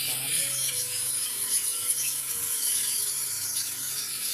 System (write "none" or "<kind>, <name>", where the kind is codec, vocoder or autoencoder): codec, DAC